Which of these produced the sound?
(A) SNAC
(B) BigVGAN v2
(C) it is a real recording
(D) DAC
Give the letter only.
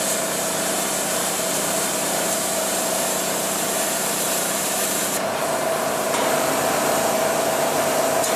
B